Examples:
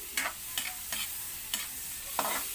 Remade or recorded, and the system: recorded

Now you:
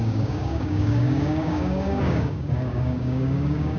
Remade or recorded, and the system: remade, codec, DAC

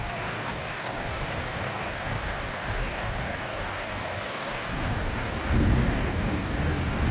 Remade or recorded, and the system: remade, codec, DAC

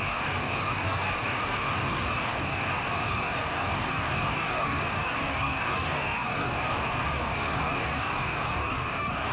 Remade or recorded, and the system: remade, codec, DAC